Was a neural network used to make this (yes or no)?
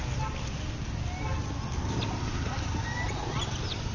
no